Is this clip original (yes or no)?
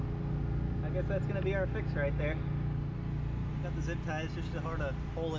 yes